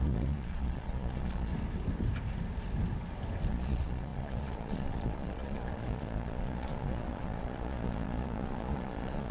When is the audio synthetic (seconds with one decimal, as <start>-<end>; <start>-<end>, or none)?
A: 0.0-1.5; 3.5-9.3